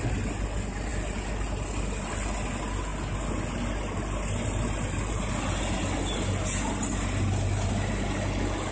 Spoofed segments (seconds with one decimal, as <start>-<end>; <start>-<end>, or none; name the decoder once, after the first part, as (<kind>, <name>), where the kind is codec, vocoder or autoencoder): none